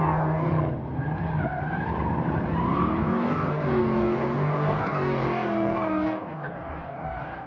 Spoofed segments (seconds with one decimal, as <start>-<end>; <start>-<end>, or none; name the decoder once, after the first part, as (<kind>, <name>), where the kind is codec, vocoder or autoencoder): 0.0-0.5 (codec, DAC); 3.0-7.5